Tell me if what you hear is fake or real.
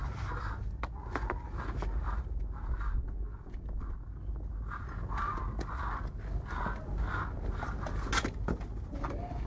real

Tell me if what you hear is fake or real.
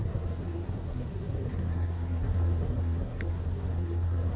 fake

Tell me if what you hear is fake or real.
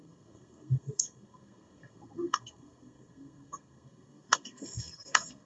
fake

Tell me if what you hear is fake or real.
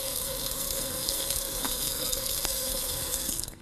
fake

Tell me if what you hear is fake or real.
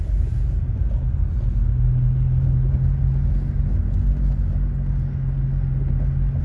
real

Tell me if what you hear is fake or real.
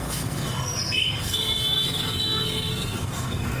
fake